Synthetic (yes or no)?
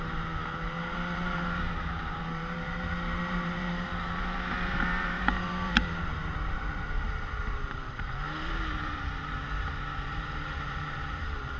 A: yes